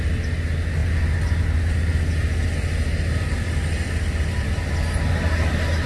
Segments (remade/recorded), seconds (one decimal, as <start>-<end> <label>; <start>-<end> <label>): 0.0-5.9 recorded